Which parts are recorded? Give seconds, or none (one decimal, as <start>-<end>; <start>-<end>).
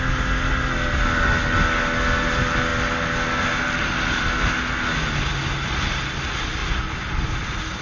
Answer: 0.0-7.8